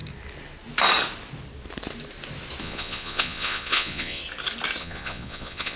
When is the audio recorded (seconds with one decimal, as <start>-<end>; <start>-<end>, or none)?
0.0-2.6; 4.2-4.8